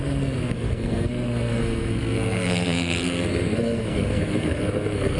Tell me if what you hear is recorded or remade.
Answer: remade